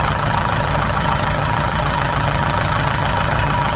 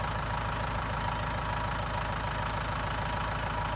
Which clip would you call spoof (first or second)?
first